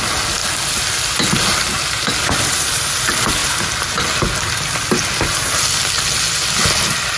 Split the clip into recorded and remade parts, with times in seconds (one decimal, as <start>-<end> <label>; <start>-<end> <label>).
0.0-7.2 recorded